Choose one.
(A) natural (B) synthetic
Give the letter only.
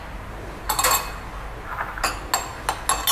A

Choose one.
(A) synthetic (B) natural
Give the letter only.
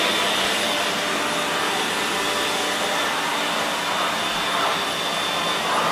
B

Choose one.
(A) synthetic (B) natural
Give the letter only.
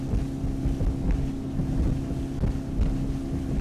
B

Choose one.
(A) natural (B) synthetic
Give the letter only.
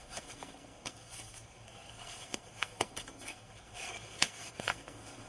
B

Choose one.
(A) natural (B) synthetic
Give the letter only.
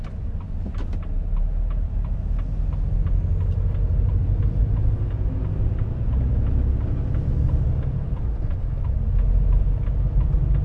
A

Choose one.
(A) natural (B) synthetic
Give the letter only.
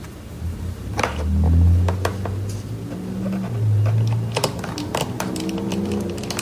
A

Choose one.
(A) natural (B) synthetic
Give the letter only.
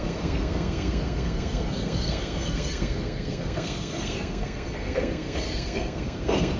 B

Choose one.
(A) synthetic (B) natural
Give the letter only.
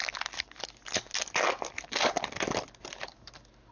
B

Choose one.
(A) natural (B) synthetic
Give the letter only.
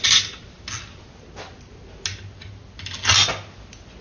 A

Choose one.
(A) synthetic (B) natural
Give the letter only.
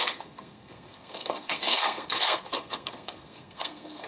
A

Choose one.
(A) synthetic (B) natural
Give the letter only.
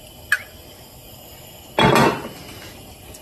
B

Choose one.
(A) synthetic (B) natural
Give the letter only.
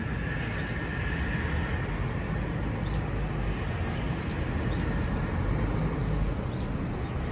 B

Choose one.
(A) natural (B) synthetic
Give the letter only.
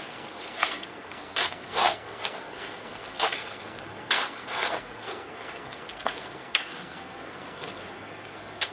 B